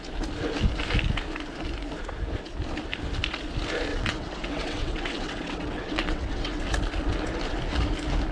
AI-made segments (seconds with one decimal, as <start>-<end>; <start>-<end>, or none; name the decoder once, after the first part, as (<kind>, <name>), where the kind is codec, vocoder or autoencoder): 3.9-6.6 (vocoder, WaveNeXt)